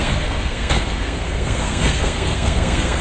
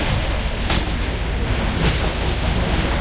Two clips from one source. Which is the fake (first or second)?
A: first